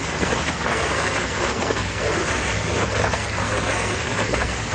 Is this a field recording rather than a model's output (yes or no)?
no